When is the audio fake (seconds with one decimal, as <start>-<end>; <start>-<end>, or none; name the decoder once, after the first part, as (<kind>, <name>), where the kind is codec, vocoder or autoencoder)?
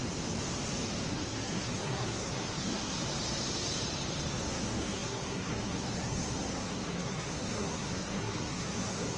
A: 1.1-3.0 (codec, SNAC); 4.4-9.2